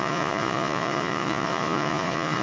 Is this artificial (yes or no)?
yes